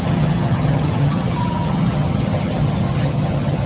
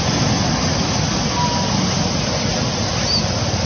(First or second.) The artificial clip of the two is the first